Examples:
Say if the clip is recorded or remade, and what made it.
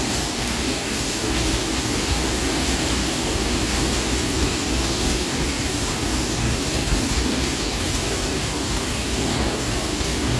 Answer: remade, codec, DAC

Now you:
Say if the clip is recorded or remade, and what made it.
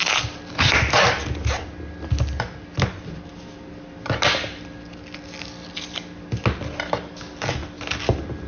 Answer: recorded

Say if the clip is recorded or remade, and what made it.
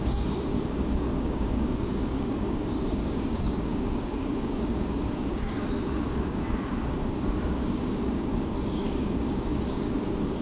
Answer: remade, codec, DAC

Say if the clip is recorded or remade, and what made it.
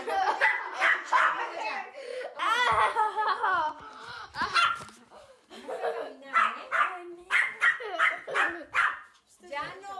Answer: recorded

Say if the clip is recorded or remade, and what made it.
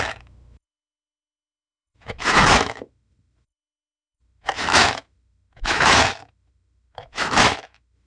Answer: remade, autoencoder, DAC-VAE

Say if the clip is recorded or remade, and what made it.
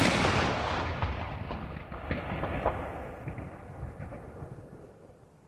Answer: recorded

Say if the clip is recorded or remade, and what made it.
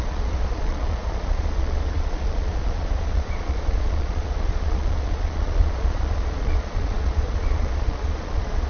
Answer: remade, vocoder, Vocos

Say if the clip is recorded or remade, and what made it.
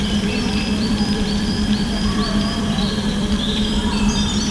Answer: remade, vocoder, BigVGAN v2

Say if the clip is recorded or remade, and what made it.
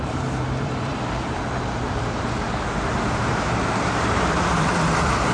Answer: remade, vocoder, BigVGAN v2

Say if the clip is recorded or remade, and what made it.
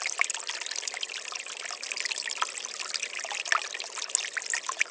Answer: recorded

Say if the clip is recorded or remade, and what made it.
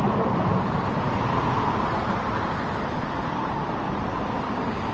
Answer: recorded